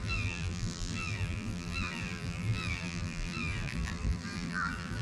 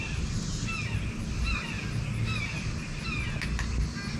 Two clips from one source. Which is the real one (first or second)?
second